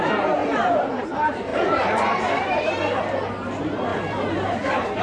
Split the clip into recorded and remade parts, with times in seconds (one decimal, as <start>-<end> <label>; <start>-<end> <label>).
0.0-5.0 remade